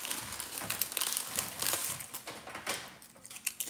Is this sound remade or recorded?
recorded